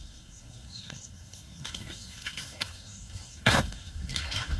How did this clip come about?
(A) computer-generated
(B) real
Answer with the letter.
A